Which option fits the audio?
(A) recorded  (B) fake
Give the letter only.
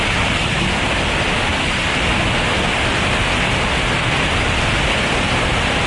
A